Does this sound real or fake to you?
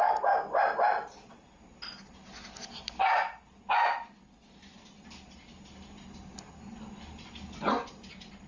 real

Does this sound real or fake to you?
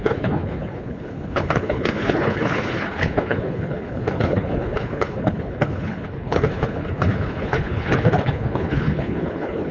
fake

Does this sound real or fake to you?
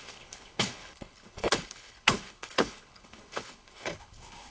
fake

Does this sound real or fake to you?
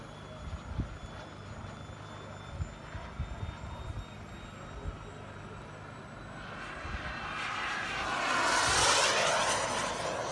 real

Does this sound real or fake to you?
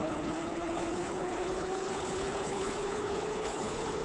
fake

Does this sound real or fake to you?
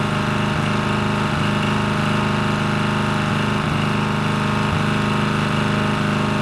real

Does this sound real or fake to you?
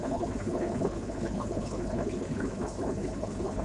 fake